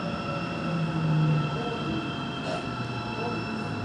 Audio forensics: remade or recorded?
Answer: recorded